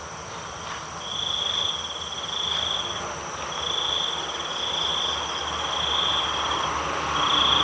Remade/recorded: recorded